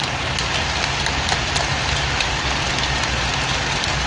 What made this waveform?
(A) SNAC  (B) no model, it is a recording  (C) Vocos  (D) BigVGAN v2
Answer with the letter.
B